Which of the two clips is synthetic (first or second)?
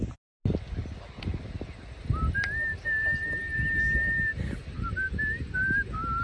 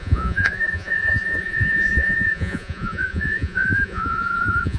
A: second